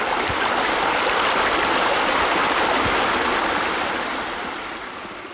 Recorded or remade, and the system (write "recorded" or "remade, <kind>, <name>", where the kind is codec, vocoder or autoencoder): recorded